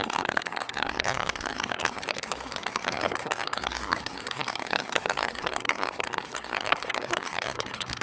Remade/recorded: remade